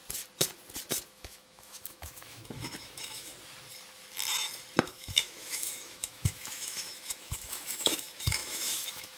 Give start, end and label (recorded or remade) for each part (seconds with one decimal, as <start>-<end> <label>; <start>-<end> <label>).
0.0-1.1 recorded; 1.1-3.3 remade; 3.3-4.8 recorded; 4.8-9.2 remade